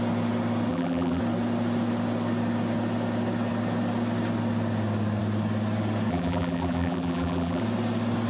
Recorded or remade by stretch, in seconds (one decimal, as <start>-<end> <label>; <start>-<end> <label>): 0.0-0.7 recorded; 0.7-1.2 remade; 1.2-6.1 recorded; 6.1-7.6 remade; 7.6-8.3 recorded